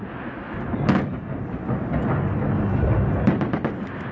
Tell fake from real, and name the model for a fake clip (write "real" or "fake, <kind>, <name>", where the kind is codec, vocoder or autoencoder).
real